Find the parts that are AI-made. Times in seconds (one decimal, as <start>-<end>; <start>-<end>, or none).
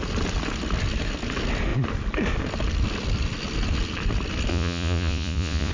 4.5-5.7